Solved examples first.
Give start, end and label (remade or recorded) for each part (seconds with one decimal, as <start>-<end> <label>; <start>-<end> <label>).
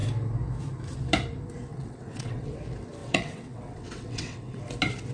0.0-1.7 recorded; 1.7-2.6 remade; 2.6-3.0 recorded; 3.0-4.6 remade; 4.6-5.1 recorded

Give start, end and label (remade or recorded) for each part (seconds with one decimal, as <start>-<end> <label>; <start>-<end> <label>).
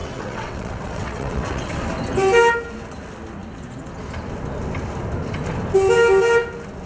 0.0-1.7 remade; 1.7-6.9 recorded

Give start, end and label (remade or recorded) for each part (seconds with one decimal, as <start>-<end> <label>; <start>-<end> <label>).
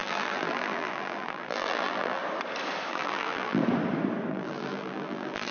0.0-2.2 remade; 2.2-2.9 recorded; 2.9-3.6 remade; 3.6-4.3 recorded; 4.3-5.5 remade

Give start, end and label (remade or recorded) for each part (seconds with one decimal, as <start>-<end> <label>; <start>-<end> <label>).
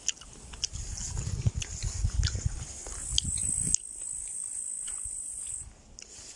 0.0-6.4 recorded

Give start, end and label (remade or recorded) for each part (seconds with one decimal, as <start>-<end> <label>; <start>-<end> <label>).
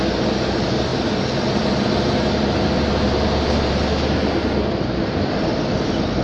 0.0-6.2 recorded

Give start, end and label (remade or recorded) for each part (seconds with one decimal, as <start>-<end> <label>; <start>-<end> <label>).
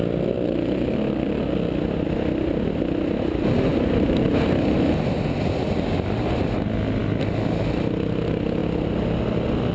0.0-9.7 recorded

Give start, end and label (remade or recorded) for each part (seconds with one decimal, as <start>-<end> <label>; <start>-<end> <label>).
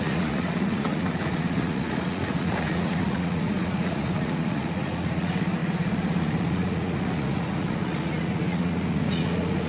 0.0-9.7 remade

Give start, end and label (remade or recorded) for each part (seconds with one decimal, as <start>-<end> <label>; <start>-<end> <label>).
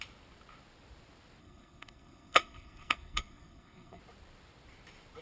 0.0-1.4 recorded; 1.4-4.0 remade; 4.0-5.2 recorded